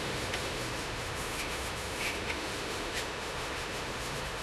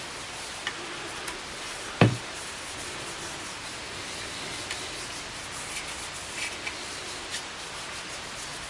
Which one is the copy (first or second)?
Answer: first